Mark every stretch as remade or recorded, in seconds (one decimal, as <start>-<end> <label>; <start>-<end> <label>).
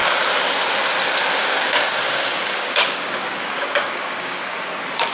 0.0-1.3 recorded; 1.3-4.4 remade; 4.4-5.1 recorded